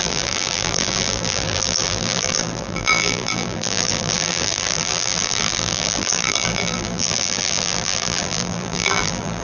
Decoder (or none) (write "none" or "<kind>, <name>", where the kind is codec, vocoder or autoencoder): vocoder, BigVGAN v2